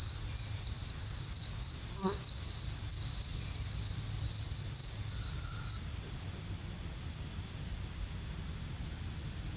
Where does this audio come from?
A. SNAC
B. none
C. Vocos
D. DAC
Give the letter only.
B